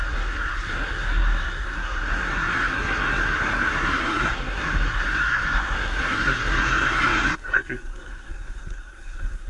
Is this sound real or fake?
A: fake